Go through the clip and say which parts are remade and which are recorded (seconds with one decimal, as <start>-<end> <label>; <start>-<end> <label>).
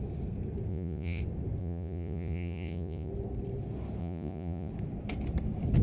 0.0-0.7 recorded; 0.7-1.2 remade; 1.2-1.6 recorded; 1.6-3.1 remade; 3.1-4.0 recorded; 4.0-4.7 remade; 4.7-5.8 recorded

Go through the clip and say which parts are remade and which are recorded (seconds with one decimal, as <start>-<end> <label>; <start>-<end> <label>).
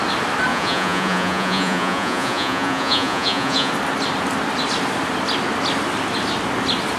0.0-0.5 recorded; 0.5-3.7 remade; 3.7-7.0 recorded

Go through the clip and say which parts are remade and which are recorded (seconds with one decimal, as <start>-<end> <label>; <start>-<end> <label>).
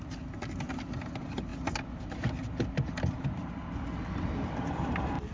0.0-5.3 recorded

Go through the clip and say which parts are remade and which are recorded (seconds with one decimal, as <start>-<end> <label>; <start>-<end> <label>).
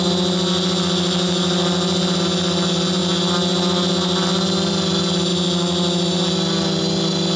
0.0-7.4 recorded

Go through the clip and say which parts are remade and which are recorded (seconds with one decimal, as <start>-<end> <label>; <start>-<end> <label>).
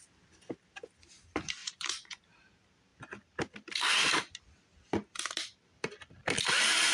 0.0-1.6 recorded; 1.6-2.2 remade; 2.2-6.9 recorded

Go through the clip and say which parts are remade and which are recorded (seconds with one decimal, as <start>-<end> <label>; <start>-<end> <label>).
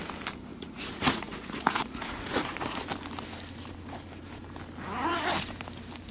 0.0-0.5 recorded; 0.5-2.8 remade; 2.8-6.1 recorded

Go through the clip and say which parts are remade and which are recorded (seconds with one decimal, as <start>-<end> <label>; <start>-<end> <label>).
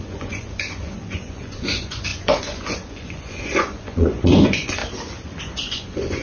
0.0-4.8 remade; 4.8-5.4 recorded; 5.4-6.2 remade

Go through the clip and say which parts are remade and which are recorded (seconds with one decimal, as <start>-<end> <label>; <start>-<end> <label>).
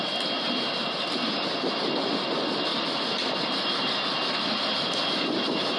0.0-5.8 recorded